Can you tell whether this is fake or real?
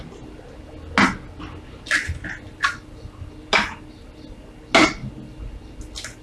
real